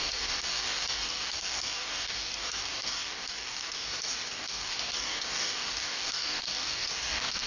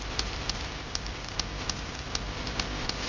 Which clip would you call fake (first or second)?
first